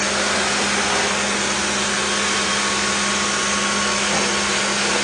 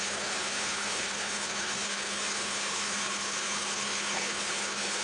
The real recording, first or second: first